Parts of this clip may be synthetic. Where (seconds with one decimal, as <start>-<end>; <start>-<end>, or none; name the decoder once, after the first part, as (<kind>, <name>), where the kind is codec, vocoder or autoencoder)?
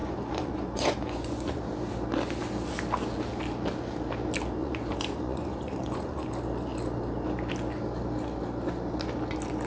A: 0.0-1.6 (vocoder, Vocos); 4.6-6.3